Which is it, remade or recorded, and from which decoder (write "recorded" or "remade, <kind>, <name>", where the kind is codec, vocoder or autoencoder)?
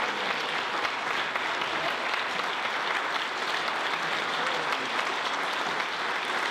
recorded